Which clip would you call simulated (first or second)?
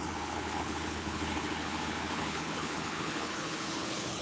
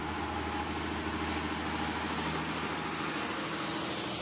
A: first